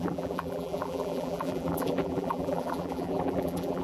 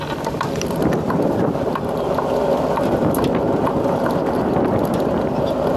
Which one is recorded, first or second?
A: second